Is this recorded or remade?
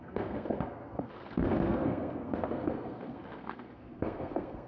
remade